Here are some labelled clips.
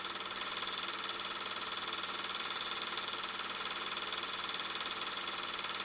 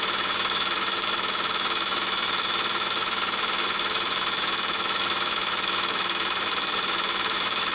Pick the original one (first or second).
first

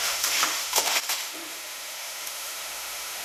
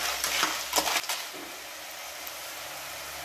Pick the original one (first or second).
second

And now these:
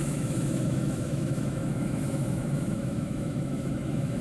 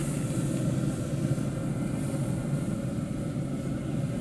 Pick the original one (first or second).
second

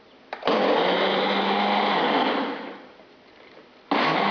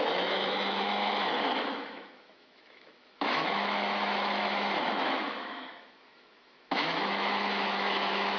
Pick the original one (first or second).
first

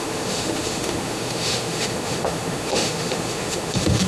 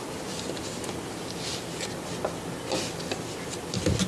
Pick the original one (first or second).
second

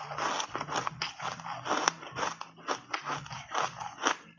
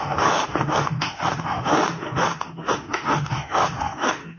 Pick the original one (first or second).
first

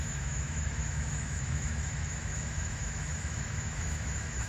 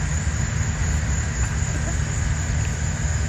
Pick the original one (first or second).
second